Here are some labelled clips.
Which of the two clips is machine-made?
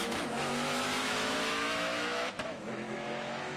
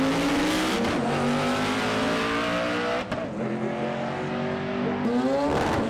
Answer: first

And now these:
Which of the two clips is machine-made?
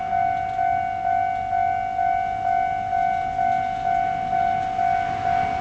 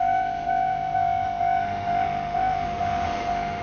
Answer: second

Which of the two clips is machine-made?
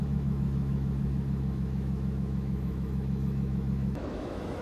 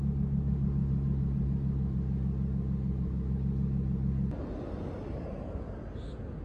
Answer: first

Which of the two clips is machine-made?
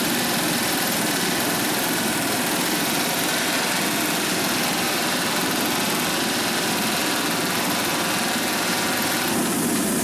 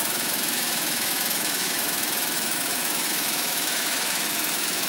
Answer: second